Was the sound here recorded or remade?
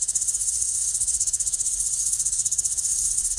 remade